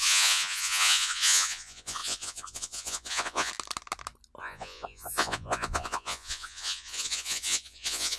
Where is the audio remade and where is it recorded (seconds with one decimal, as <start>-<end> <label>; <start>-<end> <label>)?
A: 0.0-3.5 remade; 3.5-4.4 recorded; 4.4-8.2 remade